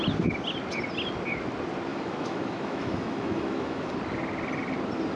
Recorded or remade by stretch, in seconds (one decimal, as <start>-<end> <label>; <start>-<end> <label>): 0.0-1.9 recorded; 1.9-3.9 remade; 3.9-5.2 recorded